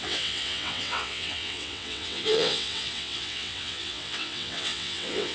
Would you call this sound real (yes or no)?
no